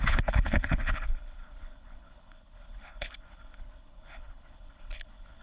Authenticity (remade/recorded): remade